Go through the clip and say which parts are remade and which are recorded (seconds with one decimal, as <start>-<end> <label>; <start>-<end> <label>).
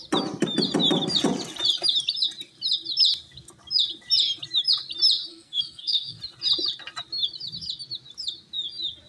0.0-5.3 recorded; 5.3-6.2 remade; 6.2-9.1 recorded